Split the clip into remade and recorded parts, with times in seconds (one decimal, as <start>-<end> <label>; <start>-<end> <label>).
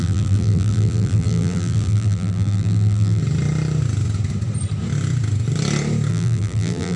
0.0-3.2 remade; 3.2-6.1 recorded; 6.1-7.0 remade